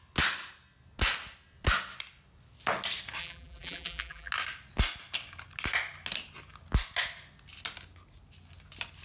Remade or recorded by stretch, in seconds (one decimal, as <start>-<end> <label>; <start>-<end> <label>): 0.0-3.2 recorded; 3.2-4.3 remade; 4.3-9.0 recorded